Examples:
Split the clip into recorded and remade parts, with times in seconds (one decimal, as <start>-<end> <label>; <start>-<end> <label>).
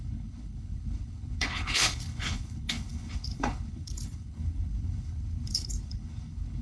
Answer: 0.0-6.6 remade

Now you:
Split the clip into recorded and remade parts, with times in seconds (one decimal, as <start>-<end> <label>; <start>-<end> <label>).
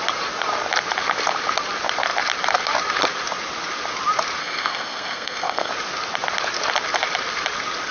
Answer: 0.0-4.4 recorded; 4.4-5.7 remade; 5.7-7.9 recorded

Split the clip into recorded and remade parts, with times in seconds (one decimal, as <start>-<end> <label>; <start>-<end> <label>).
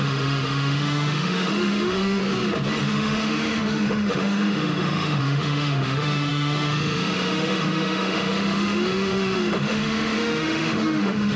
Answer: 0.0-2.2 remade; 2.2-2.8 recorded; 2.8-11.4 remade